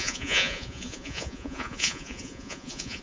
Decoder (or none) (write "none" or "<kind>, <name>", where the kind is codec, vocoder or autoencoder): vocoder, Vocos